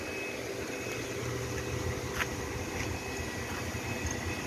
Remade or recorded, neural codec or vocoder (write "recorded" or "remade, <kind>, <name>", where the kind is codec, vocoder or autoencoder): recorded